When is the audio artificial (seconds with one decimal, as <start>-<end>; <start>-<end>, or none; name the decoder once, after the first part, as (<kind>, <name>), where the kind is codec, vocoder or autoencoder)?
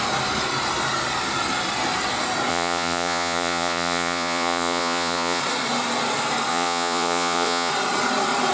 2.5-5.4 (vocoder, Vocos); 6.5-7.7